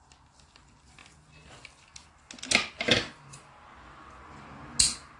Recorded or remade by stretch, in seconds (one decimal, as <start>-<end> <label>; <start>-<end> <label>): 0.0-5.2 recorded